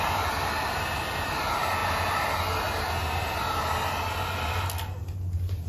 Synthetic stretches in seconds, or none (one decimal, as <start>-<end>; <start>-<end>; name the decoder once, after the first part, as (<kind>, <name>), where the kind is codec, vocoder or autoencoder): 5.0-5.7 (vocoder, BigVGAN v2)